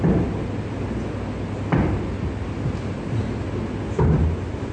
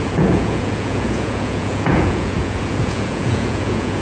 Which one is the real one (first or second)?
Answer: first